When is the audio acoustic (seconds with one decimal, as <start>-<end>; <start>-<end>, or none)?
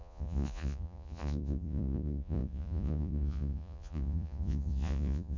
none